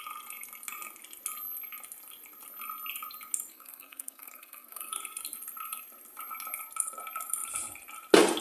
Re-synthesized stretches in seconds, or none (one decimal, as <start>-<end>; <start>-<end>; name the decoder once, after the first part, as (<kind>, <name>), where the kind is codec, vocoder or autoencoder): 3.5-4.9 (codec, SNAC)